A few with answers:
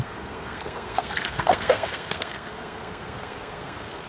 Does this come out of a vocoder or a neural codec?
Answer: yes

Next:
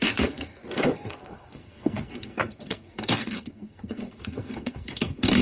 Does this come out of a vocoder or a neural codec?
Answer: yes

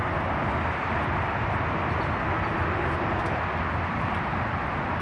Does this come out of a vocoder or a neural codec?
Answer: no